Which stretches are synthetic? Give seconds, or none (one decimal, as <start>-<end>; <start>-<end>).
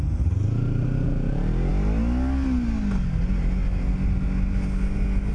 none